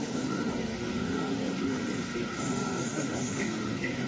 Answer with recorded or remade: remade